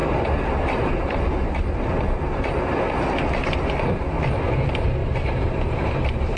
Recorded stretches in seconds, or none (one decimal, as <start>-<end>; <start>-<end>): 1.3-5.0